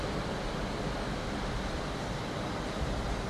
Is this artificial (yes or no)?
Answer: no